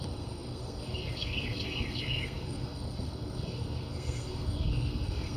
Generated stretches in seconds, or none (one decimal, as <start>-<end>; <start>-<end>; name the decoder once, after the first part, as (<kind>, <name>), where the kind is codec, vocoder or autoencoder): 0.0-5.4 (codec, SNAC)